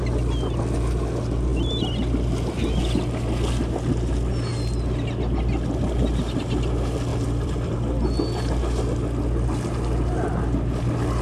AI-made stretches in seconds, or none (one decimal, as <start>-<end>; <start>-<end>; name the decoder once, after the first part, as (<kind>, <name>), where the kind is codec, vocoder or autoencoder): 7.1-7.7 (vocoder, BigVGAN v2)